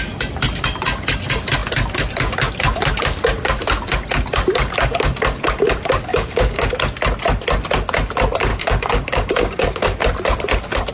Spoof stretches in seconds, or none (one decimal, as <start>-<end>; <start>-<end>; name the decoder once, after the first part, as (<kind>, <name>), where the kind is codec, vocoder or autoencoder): 6.1-6.7 (codec, DAC); 8.5-10.0